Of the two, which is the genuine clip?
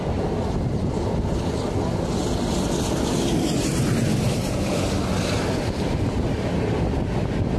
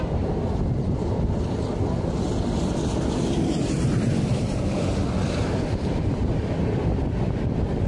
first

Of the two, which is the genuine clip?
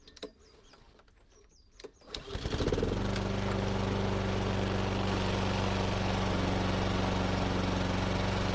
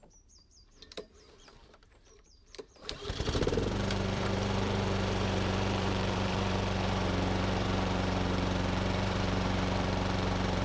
first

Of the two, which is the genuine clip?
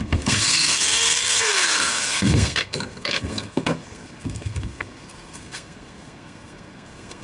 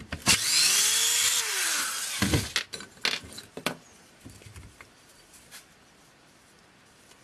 second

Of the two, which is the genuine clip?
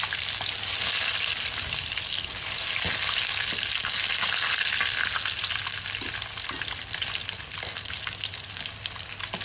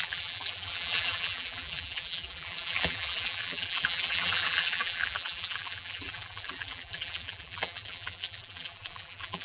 first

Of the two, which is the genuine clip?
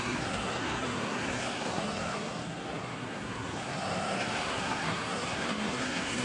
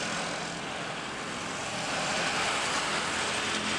second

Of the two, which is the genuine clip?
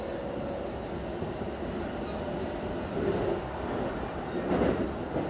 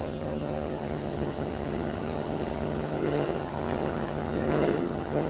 first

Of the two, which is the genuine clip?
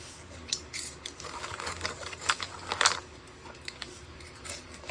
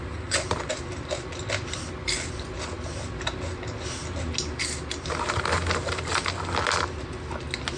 second